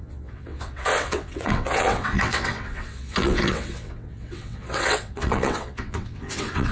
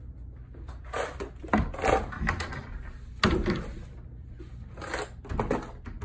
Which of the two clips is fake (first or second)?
first